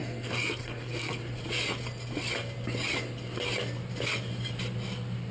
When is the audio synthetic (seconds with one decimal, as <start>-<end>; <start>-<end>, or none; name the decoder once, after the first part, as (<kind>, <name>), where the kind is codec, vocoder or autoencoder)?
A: 0.0-1.2 (codec, SNAC)